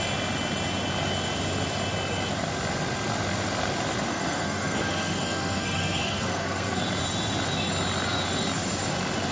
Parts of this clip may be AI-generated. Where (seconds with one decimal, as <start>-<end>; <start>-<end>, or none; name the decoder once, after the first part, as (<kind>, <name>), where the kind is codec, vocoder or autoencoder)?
4.1-6.8 (codec, SNAC)